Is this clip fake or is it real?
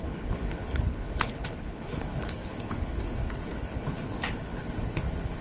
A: fake